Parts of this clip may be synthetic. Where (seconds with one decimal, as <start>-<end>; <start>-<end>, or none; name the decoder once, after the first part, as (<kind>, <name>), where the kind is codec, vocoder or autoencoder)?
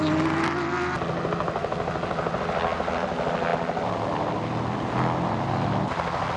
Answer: none